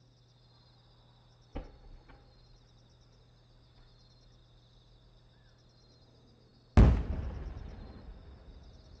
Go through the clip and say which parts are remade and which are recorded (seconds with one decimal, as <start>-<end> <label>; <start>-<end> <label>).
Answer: 0.0-9.0 recorded